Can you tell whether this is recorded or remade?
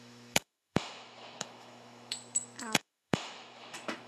remade